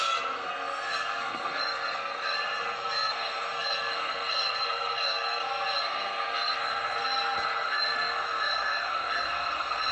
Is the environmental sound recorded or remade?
remade